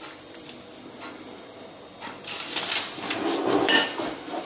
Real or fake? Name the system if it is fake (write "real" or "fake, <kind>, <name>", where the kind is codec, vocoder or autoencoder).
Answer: real